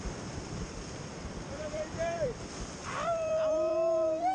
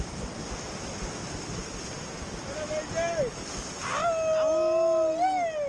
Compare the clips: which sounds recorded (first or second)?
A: second